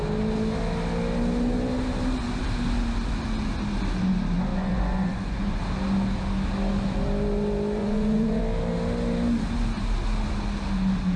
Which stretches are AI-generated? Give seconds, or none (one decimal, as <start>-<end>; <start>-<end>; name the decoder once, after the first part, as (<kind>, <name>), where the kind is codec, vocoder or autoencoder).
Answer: 4.5-5.6 (vocoder, Vocos); 7.8-8.4